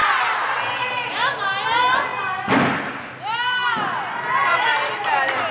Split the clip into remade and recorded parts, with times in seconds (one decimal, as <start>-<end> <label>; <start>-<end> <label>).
0.0-5.5 recorded

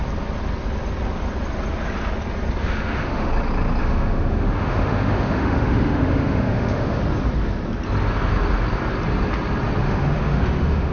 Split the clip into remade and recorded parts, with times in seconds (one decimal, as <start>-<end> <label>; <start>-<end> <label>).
0.0-2.6 recorded; 2.6-3.3 remade; 3.3-3.8 recorded; 3.8-7.0 remade; 7.0-9.8 recorded; 9.8-10.9 remade

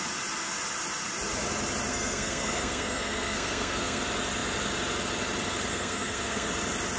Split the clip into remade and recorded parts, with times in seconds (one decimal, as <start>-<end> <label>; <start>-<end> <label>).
0.0-1.9 recorded; 1.9-4.0 remade; 4.0-5.7 recorded; 5.7-6.5 remade; 6.5-7.0 recorded

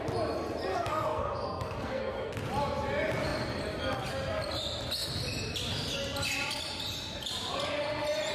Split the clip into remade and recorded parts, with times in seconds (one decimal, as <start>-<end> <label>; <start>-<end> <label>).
0.0-0.7 recorded; 0.7-2.3 remade; 2.3-8.3 recorded